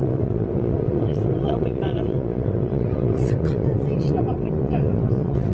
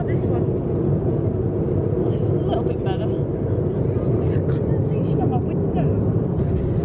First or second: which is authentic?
second